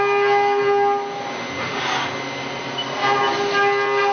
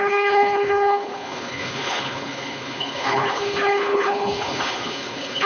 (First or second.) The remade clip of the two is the second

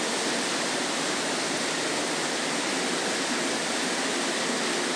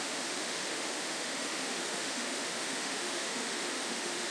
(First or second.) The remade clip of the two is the second